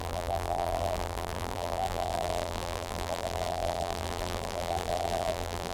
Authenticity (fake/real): fake